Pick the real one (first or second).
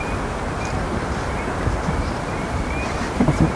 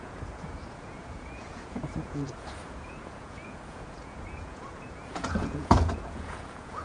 first